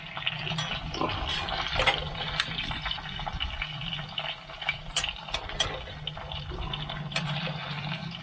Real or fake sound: real